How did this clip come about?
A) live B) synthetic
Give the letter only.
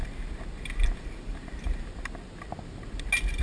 A